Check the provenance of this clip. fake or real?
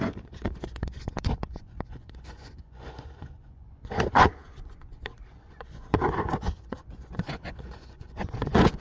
fake